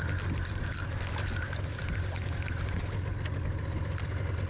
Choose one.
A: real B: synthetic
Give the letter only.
A